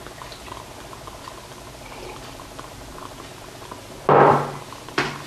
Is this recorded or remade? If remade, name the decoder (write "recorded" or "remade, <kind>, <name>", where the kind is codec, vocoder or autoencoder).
recorded